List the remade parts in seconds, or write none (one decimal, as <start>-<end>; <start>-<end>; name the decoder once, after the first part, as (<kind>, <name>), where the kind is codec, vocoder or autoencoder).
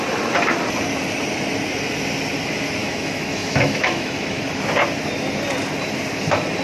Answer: 2.8-4.4 (autoencoder, DAC-VAE)